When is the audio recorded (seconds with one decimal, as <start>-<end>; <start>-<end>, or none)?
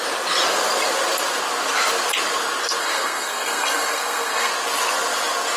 0.0-2.8; 4.5-5.6